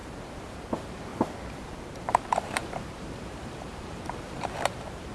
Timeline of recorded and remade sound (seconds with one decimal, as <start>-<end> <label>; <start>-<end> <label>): 0.0-1.1 remade; 1.1-2.0 recorded; 2.0-5.1 remade